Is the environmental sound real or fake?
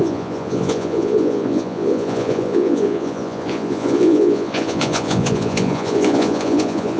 fake